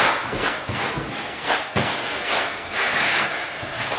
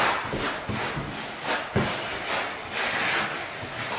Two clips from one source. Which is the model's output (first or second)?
first